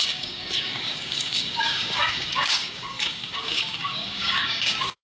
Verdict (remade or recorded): remade